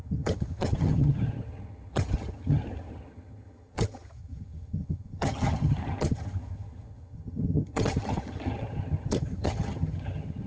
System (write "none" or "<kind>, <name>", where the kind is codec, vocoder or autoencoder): vocoder, HiFi-GAN